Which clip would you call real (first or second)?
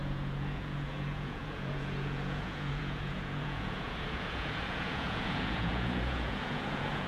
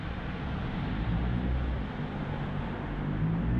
second